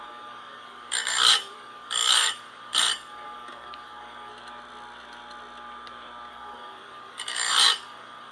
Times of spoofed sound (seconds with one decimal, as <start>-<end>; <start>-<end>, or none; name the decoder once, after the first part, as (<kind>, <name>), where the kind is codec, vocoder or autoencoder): 0.0-4.3 (codec, DAC); 6.3-8.3